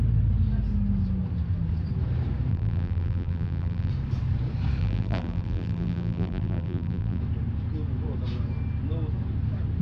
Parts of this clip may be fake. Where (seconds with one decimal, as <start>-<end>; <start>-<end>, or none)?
2.5-3.9; 4.8-7.2